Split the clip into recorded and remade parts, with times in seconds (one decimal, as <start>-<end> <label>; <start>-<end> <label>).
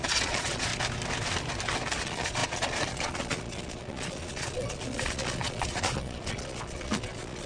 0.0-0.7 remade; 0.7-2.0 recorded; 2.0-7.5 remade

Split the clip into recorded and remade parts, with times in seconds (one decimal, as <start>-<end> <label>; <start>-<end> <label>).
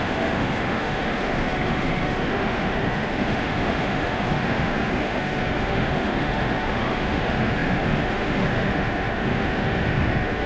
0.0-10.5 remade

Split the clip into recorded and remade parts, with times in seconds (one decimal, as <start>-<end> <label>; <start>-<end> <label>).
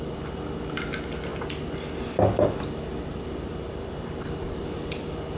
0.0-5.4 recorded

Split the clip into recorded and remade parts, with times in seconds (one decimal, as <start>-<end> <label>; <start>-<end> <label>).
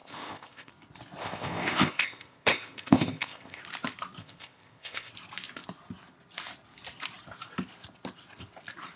0.0-0.7 remade; 0.7-1.2 recorded; 1.2-3.6 remade; 3.6-4.2 recorded; 4.2-5.1 remade; 5.1-9.0 recorded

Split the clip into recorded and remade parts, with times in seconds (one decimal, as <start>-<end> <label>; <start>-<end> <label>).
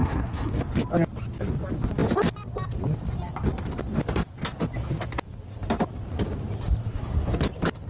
0.0-0.5 remade; 0.5-6.8 recorded; 6.8-7.4 remade; 7.4-7.9 recorded